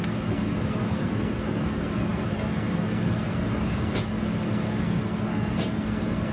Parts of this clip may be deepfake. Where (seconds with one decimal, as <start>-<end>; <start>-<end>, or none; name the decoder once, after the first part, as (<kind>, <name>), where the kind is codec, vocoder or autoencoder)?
0.0-6.3 (codec, SNAC)